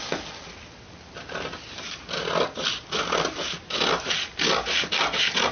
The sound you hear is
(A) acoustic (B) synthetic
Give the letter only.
A